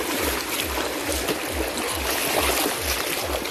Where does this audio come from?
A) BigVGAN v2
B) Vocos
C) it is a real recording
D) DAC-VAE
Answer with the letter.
C